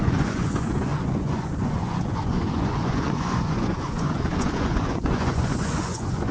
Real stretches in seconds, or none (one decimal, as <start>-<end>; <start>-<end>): none